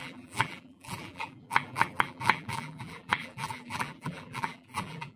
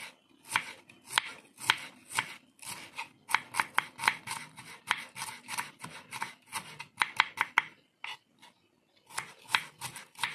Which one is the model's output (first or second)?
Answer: first